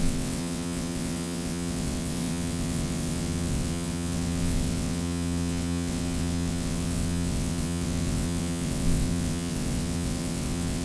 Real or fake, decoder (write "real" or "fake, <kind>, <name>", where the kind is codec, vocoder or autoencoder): fake, vocoder, WaveNeXt